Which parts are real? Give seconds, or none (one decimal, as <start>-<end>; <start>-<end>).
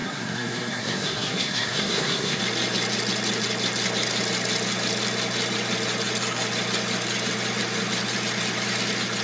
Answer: 2.4-9.2